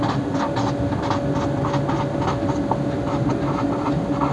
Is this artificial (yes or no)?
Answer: no